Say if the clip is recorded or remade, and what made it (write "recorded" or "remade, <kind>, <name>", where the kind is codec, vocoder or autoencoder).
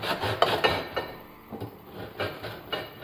recorded